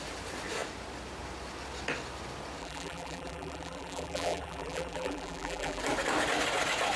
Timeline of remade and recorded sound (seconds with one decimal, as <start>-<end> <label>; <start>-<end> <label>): 0.0-2.6 recorded; 2.6-5.8 remade; 5.8-7.0 recorded